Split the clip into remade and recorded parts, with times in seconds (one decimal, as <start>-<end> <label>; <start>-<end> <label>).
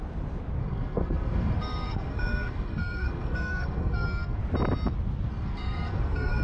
0.0-0.6 recorded; 0.6-4.4 remade; 4.4-5.3 recorded; 5.3-6.4 remade